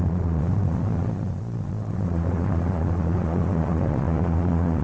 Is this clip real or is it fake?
fake